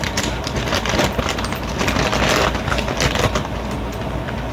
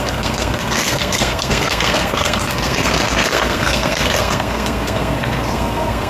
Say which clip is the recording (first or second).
first